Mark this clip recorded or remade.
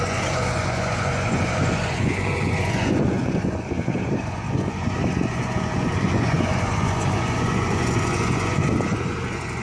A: remade